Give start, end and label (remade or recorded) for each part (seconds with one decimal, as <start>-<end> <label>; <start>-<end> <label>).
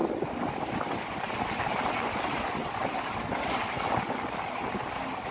0.0-5.3 recorded